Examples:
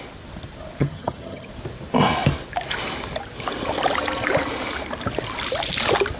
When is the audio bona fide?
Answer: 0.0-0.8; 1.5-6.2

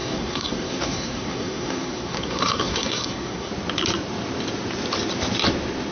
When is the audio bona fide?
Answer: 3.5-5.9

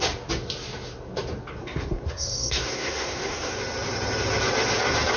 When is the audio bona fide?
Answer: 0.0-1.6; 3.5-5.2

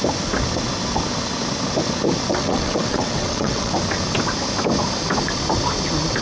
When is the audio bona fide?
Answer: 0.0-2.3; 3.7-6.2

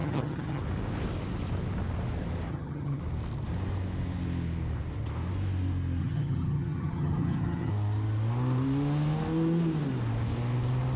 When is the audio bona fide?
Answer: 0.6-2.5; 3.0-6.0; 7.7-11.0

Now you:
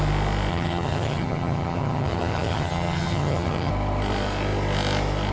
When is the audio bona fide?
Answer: 0.0-0.5; 3.7-5.3

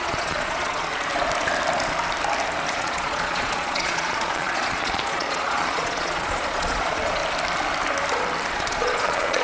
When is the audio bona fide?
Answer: 0.9-2.7; 7.2-8.5

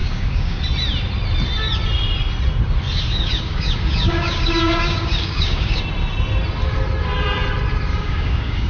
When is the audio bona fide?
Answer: 0.6-3.1; 5.8-7.9